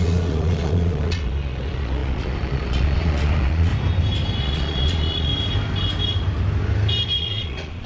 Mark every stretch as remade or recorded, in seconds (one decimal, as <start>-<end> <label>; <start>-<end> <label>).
0.0-3.7 remade; 3.7-4.4 recorded; 4.4-5.3 remade; 5.3-7.2 recorded; 7.2-7.9 remade